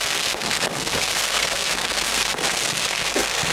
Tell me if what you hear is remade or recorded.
remade